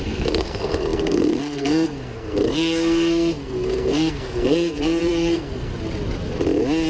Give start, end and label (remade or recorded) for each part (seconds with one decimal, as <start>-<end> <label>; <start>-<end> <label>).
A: 0.0-5.7 remade; 5.7-6.9 recorded